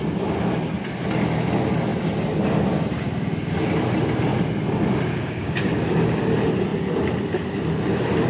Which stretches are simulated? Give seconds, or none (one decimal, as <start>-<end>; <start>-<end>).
5.2-6.2